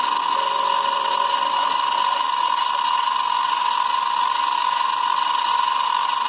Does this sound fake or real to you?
fake